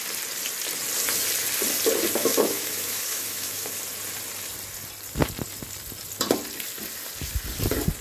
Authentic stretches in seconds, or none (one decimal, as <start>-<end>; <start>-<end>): 0.0-2.2; 3.8-8.0